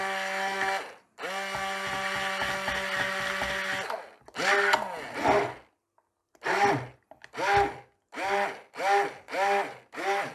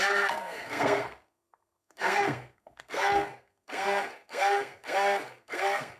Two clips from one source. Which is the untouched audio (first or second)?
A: first